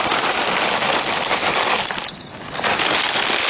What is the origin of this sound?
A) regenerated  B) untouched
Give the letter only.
B